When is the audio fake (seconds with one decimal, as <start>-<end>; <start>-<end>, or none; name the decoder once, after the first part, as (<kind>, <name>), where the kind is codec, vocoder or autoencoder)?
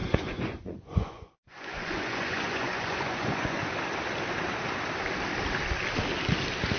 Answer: 0.0-3.6 (vocoder, Vocos)